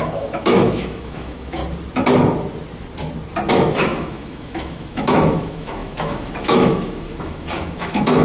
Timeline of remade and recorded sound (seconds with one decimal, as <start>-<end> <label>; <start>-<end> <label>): 0.0-1.6 remade; 1.6-3.5 recorded; 3.5-8.2 remade